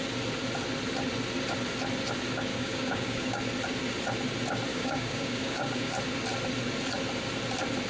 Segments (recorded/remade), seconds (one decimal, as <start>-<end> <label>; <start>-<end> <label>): 0.0-2.5 recorded; 2.5-3.4 remade; 3.4-4.7 recorded; 4.7-5.9 remade; 5.9-7.9 recorded